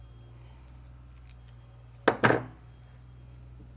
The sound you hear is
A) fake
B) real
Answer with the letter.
B